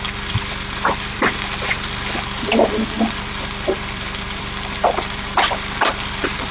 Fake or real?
fake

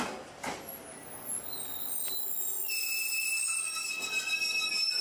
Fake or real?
real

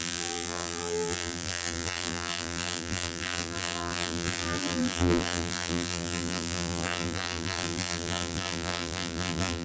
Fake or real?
fake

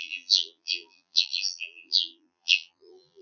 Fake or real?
fake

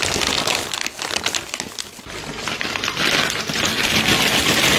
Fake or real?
real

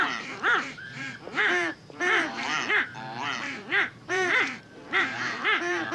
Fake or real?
fake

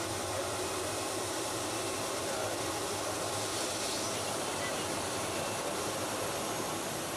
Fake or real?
fake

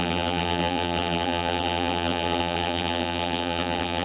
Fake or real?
fake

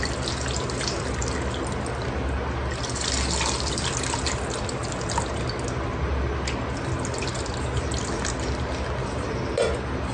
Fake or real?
real